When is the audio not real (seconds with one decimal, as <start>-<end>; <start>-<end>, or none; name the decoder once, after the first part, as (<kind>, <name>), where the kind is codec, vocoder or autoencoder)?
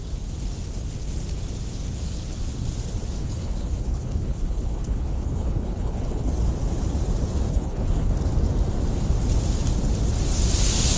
3.2-6.3 (codec, HILCodec); 7.5-8.1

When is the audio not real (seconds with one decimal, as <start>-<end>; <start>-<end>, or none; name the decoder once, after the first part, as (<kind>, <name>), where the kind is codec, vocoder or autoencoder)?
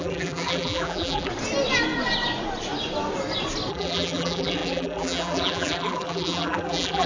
0.0-1.3 (vocoder, BigVGAN v2); 3.7-7.1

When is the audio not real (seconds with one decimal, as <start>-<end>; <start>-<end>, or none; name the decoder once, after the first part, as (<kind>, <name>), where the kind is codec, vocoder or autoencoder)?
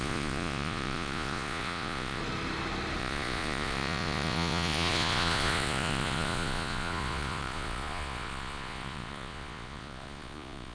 0.0-2.2 (vocoder, Vocos); 3.0-10.7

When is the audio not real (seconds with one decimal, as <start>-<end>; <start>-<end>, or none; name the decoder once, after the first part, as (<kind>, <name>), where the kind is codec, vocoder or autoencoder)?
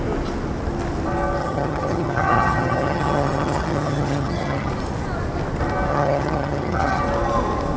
1.4-4.7 (vocoder, HiFi-GAN); 5.9-7.0